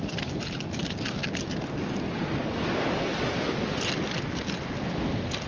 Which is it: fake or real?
real